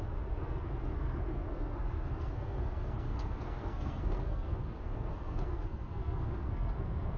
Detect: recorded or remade remade